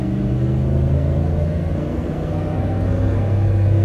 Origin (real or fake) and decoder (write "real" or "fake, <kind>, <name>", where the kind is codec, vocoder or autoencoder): fake, codec, SNAC